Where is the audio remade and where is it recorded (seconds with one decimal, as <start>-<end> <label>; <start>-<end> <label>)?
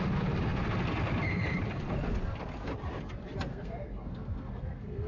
0.0-3.5 recorded; 3.5-5.1 remade